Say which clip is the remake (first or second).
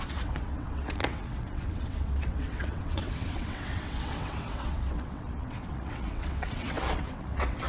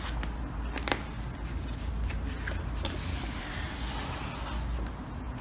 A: first